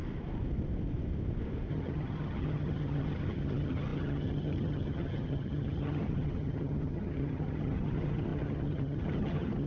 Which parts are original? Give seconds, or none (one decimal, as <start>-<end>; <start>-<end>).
0.0-1.7